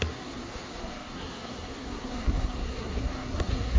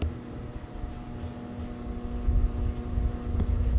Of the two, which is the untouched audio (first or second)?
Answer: second